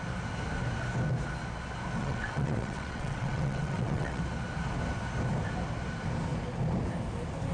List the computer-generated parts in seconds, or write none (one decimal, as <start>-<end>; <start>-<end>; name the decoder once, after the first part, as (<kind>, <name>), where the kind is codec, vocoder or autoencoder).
2.0-4.2 (vocoder, WaveNeXt)